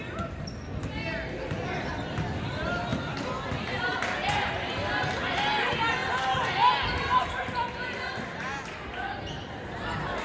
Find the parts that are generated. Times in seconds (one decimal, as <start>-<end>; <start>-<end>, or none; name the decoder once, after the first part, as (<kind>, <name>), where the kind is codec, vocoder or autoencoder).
none